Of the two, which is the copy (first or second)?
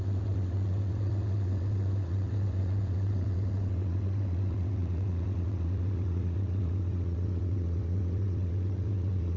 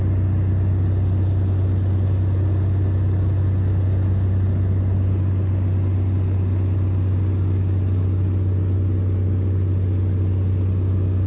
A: first